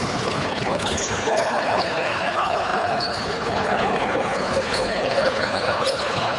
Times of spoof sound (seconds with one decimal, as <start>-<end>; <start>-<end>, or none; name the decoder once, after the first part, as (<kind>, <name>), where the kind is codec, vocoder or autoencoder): 0.0-6.4 (codec, HILCodec)